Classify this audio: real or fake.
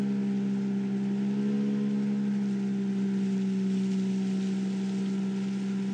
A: real